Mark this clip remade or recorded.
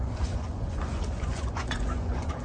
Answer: remade